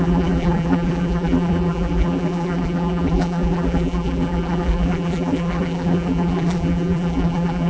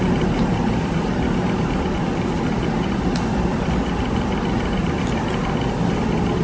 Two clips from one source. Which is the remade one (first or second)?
first